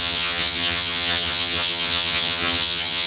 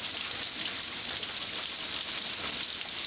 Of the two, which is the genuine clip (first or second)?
second